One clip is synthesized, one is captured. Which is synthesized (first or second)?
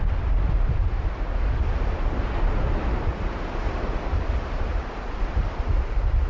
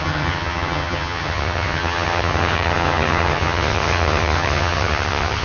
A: second